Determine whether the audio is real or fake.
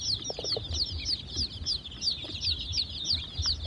real